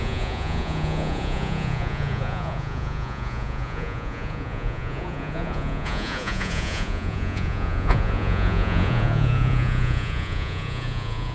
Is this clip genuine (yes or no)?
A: no